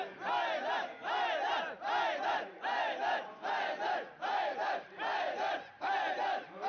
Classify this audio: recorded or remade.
recorded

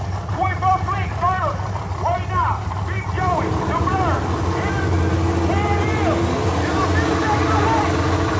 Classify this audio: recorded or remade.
recorded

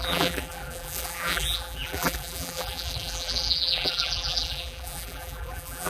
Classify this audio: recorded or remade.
remade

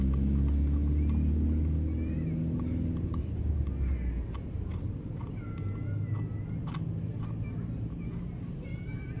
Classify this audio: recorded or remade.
recorded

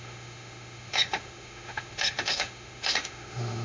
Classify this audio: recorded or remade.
remade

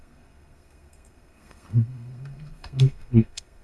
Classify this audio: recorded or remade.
remade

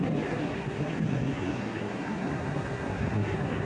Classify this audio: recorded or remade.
remade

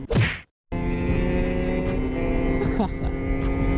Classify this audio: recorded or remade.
recorded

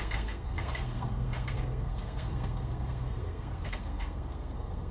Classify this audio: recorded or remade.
remade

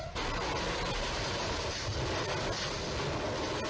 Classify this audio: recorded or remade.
recorded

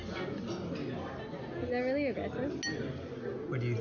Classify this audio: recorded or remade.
recorded